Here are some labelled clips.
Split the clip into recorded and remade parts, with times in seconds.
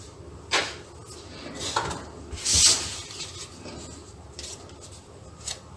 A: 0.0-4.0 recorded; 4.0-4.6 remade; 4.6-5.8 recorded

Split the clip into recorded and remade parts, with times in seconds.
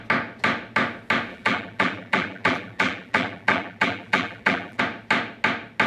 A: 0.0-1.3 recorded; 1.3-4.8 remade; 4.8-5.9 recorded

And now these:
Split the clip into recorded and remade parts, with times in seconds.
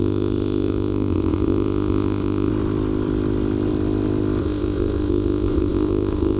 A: 0.0-2.5 remade; 2.5-4.4 recorded; 4.4-6.4 remade